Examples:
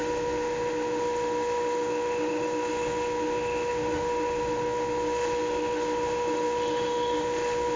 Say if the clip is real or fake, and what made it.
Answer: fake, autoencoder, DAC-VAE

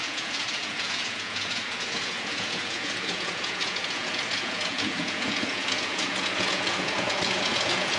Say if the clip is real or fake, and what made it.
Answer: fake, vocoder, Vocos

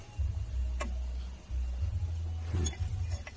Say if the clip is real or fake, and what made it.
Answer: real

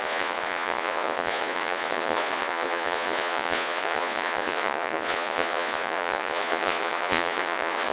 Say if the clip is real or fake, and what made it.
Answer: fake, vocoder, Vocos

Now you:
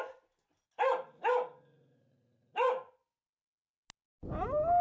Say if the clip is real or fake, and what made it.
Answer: real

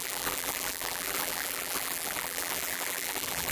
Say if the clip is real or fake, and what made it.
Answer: fake, vocoder, BigVGAN v2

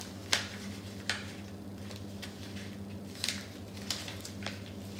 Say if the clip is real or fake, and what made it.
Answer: real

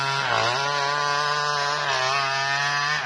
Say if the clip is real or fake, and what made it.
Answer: real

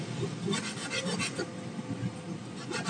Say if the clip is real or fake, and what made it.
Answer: real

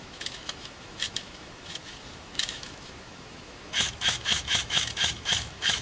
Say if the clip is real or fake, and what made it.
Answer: fake, autoencoder, DAC-VAE